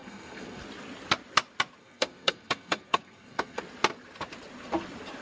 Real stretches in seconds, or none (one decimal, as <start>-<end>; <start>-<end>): 0.6-1.8; 3.6-5.2

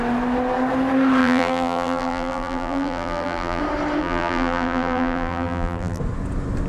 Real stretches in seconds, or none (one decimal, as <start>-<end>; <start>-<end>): 0.0-1.2; 3.6-4.0; 6.0-6.7